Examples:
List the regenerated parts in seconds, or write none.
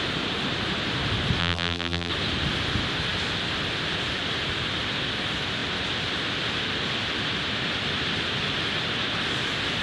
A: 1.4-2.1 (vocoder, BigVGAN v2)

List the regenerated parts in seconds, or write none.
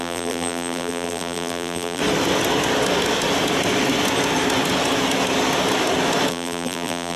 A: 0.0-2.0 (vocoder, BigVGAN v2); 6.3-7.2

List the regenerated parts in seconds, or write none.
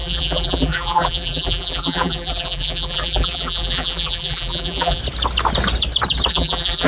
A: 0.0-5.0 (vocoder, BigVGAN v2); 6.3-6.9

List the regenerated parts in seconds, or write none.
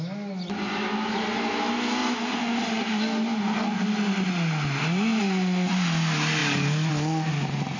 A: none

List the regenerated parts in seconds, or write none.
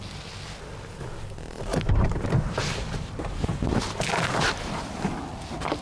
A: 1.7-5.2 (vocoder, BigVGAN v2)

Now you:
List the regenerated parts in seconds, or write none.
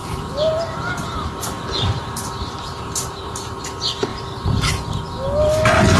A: 0.0-3.6 (vocoder, BigVGAN v2); 4.1-5.0